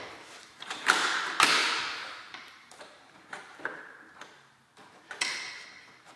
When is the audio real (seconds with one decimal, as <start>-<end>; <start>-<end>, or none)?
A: 0.0-0.4; 1.2-1.6; 5.0-6.2